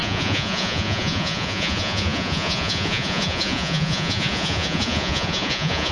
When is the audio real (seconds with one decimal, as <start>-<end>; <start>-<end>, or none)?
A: none